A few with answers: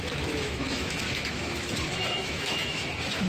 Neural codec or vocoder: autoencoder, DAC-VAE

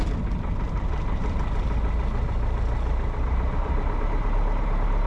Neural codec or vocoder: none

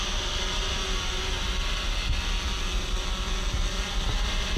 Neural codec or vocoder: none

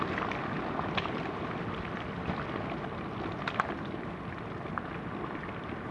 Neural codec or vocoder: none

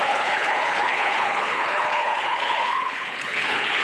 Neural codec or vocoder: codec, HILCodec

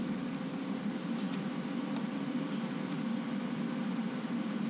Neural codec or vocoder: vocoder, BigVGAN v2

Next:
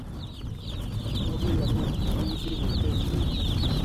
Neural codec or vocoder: none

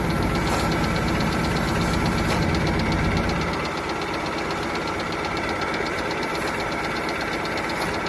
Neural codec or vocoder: none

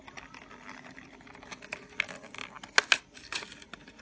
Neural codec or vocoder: none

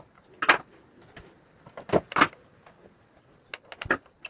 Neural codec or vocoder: none